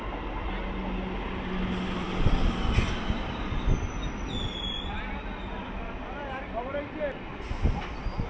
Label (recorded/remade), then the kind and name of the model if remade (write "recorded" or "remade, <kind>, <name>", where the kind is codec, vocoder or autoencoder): recorded